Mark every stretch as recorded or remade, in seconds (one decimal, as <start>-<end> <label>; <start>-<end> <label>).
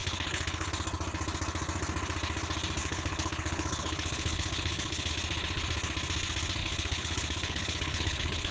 0.0-0.7 remade; 0.7-2.8 recorded; 2.8-5.1 remade; 5.1-6.6 recorded; 6.6-8.5 remade